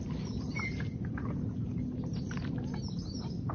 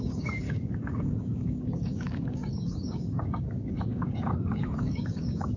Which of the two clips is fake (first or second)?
second